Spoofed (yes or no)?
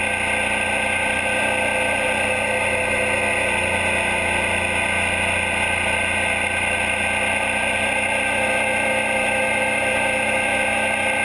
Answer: no